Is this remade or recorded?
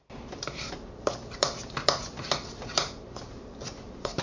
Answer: remade